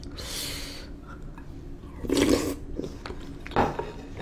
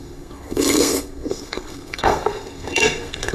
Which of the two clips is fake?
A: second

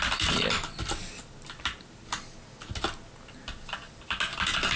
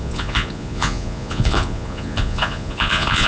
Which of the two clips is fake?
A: second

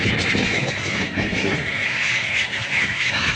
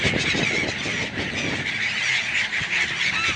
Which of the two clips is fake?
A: first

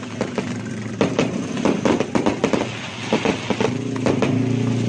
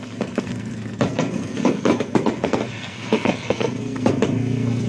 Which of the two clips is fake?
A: second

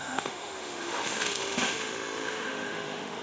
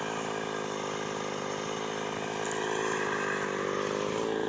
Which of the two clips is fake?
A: first